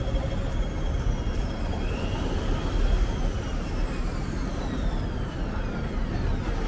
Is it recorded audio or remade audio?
recorded